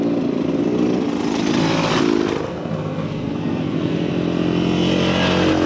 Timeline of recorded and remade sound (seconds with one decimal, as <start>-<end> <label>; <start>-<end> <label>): 0.0-2.5 recorded; 2.5-4.1 remade; 4.1-5.7 recorded